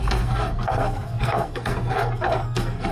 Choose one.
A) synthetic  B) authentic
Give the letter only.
A